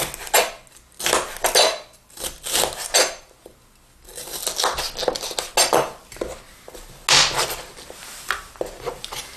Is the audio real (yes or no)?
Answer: yes